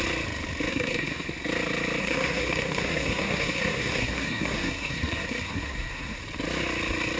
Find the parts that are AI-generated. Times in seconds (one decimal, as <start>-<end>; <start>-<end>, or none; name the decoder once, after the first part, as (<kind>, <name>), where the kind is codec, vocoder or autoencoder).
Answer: 0.7-1.3 (codec, SNAC); 2.0-6.2